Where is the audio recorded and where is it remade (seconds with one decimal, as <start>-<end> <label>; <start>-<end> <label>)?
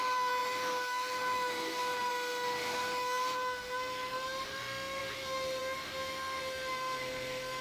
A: 0.0-7.6 remade